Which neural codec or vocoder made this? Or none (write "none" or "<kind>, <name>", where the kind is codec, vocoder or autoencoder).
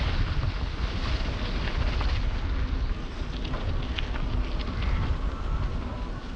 none